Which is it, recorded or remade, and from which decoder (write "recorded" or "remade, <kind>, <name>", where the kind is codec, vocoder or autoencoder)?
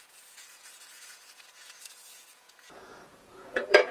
remade, vocoder, Vocos